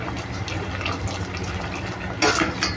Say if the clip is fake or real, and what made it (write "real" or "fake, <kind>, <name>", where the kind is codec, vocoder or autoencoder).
real